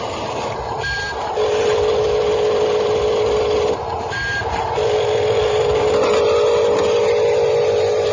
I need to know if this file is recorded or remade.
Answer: recorded